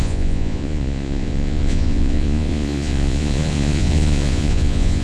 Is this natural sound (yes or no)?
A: no